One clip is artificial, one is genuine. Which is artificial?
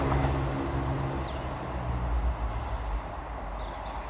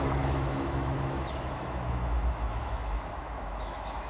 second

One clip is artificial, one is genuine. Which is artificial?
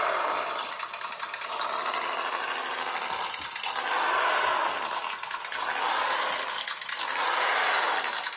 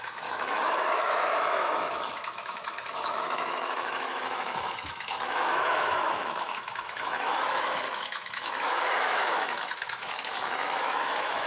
second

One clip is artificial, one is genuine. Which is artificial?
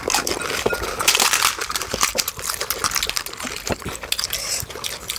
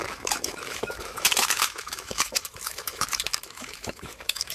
second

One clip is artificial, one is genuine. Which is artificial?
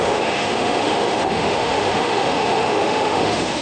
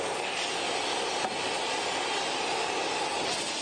first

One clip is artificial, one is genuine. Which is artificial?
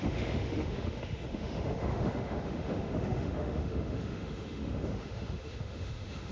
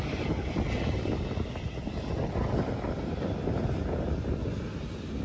first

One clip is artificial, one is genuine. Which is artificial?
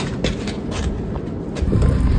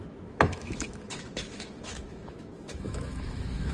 second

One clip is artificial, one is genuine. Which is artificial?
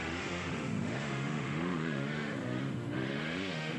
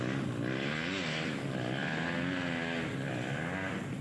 first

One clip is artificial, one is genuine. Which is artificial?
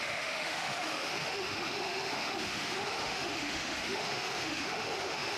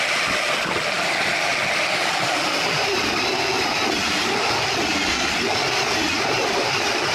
first